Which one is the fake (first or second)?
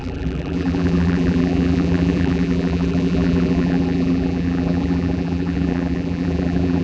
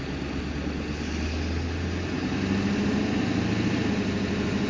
first